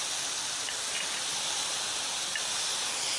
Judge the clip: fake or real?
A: real